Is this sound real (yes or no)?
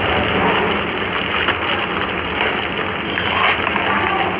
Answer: yes